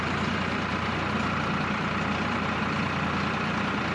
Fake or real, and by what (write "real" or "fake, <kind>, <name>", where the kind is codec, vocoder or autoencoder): fake, vocoder, BigVGAN v2